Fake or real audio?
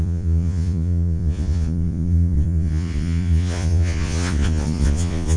fake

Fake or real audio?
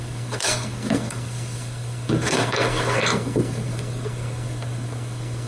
fake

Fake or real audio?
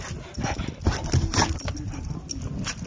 real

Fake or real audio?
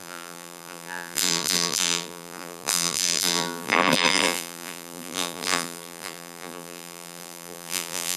fake